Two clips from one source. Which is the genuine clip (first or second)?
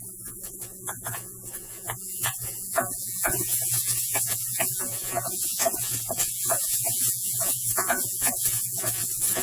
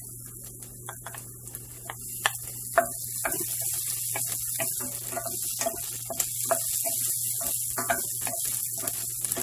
second